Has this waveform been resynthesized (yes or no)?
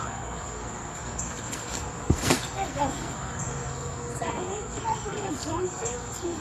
yes